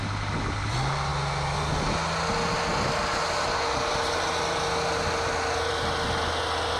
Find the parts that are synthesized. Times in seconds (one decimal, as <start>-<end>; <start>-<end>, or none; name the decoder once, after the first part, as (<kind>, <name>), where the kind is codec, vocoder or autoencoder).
none